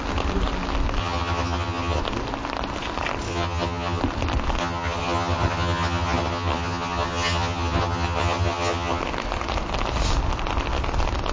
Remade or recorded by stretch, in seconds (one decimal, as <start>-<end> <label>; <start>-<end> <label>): 0.0-1.0 recorded; 1.0-2.0 remade; 2.0-3.3 recorded; 3.3-4.0 remade; 4.0-4.6 recorded; 4.6-9.0 remade; 9.0-11.3 recorded